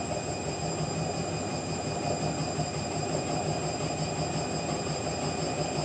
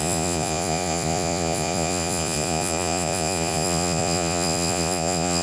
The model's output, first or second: second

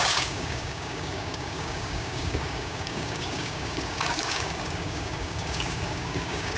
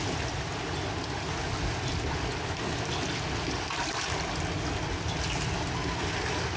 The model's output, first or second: first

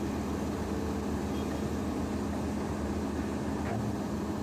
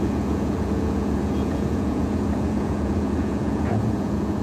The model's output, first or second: second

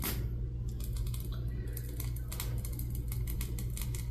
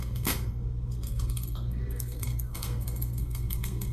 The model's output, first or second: second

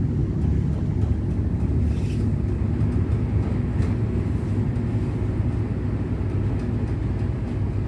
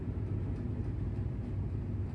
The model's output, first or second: second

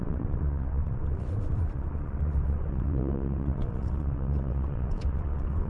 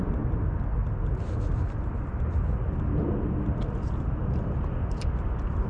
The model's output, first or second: first